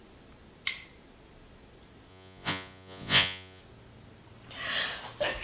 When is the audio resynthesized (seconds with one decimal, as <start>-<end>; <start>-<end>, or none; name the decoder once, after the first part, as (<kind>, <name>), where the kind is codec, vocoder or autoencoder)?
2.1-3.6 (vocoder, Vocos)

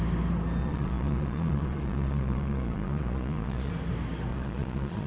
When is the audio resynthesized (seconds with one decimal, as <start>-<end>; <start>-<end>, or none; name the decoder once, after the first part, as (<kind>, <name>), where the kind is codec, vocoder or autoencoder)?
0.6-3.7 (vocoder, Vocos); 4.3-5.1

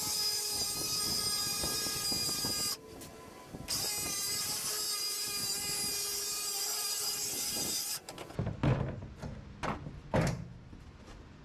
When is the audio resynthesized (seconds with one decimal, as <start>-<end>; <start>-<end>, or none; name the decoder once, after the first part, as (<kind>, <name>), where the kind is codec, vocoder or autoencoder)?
none